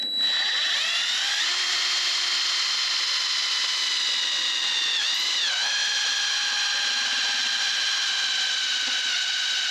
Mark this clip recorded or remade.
recorded